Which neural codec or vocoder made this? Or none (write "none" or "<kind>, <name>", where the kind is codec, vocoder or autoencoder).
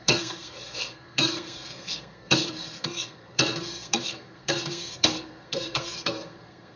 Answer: codec, SNAC